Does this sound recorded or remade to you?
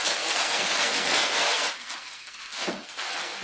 remade